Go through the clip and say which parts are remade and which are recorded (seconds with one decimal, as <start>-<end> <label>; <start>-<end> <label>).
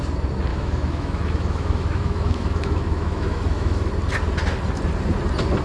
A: 0.0-0.5 recorded; 0.5-3.9 remade; 3.9-5.6 recorded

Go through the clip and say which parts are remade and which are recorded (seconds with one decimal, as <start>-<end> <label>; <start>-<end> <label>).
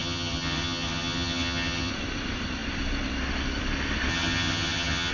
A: 0.0-1.9 remade; 1.9-4.1 recorded; 4.1-5.1 remade